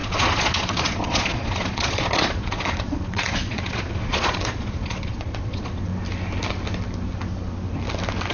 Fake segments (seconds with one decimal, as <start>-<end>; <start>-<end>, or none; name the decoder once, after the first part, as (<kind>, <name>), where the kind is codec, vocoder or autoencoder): 0.0-5.9 (vocoder, Vocos)